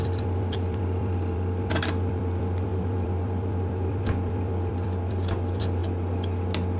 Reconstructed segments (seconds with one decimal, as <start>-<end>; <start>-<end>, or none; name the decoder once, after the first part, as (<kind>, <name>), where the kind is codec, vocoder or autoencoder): 0.0-5.8 (vocoder, BigVGAN v2)